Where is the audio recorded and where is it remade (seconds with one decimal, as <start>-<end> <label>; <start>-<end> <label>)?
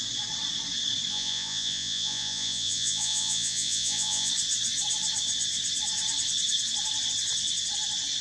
0.0-1.1 recorded; 1.1-4.3 remade; 4.3-8.2 recorded